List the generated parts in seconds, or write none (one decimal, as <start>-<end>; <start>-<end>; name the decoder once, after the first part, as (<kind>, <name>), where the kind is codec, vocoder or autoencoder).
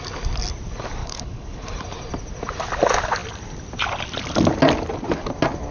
1.0-1.7 (codec, HILCodec)